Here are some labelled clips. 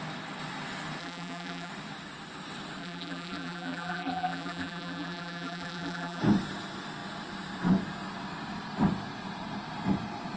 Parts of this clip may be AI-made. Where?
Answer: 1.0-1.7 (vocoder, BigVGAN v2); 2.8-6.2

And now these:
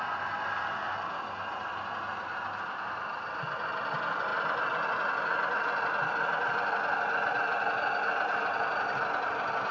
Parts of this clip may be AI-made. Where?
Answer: none

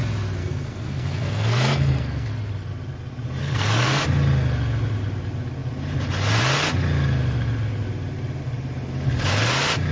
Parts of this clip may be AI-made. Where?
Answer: 0.4-2.3 (codec, SNAC); 3.4-4.0

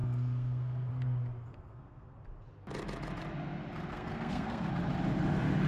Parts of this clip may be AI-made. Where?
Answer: 0.0-0.9 (codec, SNAC); 1.5-2.2; 3.9-4.7

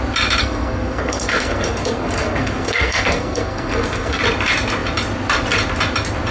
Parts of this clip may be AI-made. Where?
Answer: 0.4-4.2 (codec, SNAC)

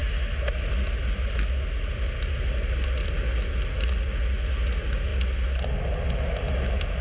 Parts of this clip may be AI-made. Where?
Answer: none

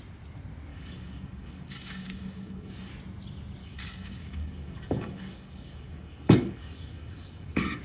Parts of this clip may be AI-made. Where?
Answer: 0.7-2.9 (codec, DAC); 3.6-7.8